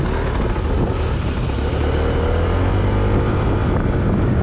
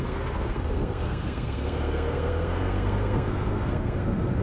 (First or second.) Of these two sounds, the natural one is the first